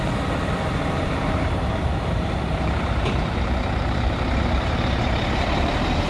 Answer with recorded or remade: remade